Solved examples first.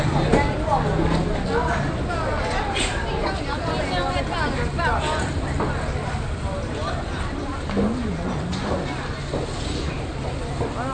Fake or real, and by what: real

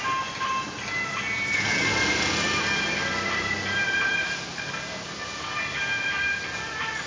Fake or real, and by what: real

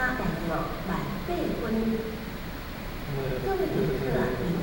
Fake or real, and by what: real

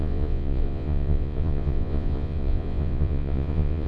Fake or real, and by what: fake, vocoder, Vocos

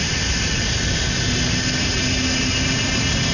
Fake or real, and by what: real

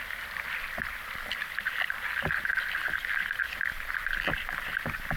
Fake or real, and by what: real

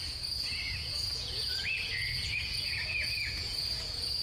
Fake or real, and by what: fake, vocoder, Vocos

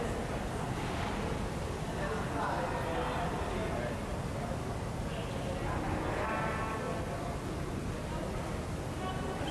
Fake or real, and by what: real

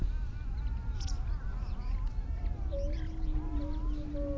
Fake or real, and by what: real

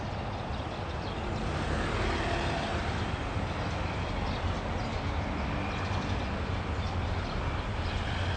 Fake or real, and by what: real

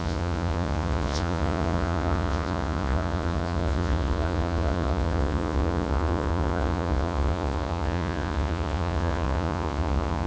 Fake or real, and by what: fake, vocoder, Vocos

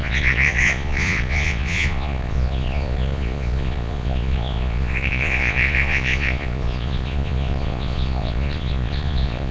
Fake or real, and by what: fake, vocoder, Vocos